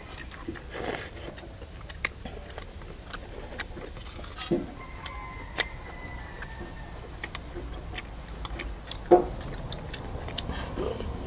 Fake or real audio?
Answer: real